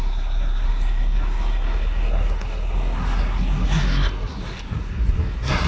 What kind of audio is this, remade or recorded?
remade